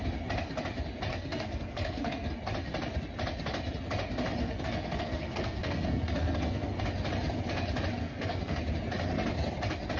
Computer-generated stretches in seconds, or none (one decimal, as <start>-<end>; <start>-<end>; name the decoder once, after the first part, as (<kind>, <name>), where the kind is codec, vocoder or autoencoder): 1.1-2.3 (codec, SNAC); 4.4-6.8; 7.9-8.6